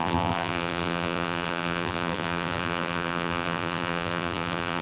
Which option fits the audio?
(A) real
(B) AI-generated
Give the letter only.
B